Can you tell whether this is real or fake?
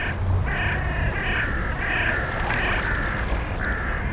real